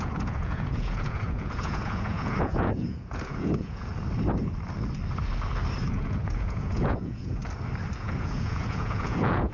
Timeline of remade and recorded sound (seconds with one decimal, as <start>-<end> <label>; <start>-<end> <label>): 0.0-3.9 remade; 3.9-5.9 recorded; 5.9-7.4 remade; 7.4-8.0 recorded; 8.0-9.5 remade